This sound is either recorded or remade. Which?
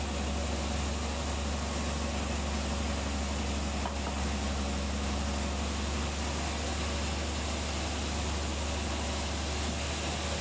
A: recorded